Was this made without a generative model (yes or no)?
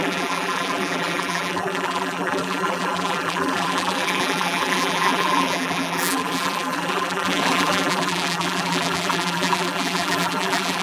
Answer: no